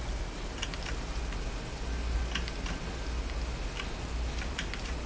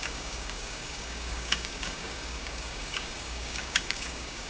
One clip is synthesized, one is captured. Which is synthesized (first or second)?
second